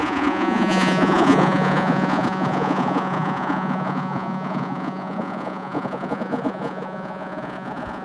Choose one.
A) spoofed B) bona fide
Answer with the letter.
A